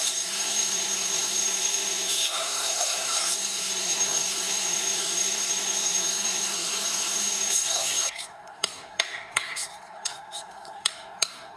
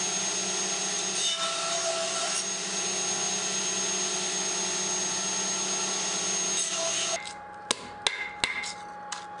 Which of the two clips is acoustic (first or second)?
second